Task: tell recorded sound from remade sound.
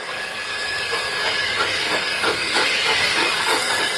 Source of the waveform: remade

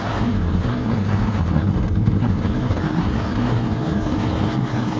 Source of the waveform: remade